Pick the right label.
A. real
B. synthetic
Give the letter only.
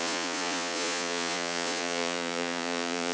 B